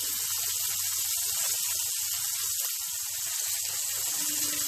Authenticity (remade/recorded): recorded